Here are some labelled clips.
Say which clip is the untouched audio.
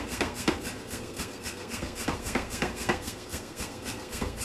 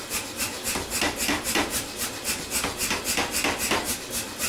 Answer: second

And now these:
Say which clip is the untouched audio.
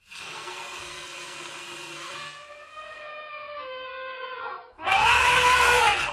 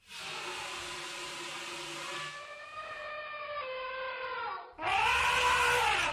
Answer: second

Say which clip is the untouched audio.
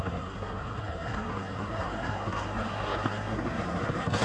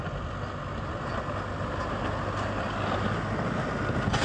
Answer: second